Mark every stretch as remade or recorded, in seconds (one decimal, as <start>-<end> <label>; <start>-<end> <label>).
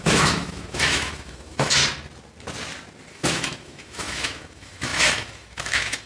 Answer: 0.0-1.8 remade; 1.8-3.1 recorded; 3.1-6.1 remade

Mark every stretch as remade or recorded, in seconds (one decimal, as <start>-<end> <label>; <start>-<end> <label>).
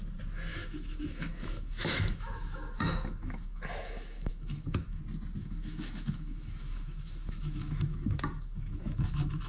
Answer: 0.0-0.5 recorded; 0.5-5.0 remade; 5.0-5.4 recorded; 5.4-9.5 remade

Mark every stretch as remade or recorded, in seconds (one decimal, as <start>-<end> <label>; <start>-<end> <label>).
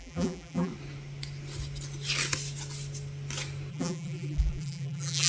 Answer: 0.0-0.7 remade; 0.7-3.7 recorded; 3.7-5.3 remade